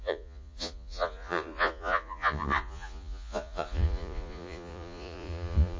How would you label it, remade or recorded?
remade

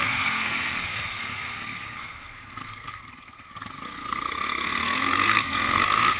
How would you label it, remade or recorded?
remade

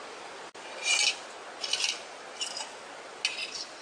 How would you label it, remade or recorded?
recorded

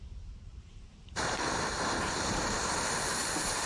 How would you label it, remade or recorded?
remade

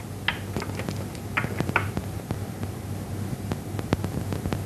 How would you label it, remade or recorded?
recorded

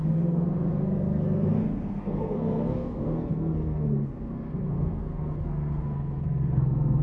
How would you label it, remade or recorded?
remade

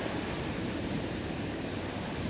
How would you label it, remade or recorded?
remade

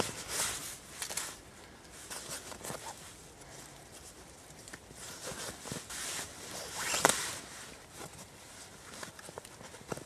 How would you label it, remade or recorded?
recorded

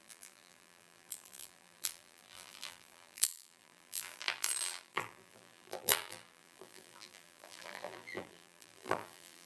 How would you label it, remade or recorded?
remade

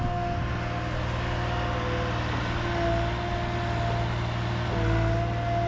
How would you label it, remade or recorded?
recorded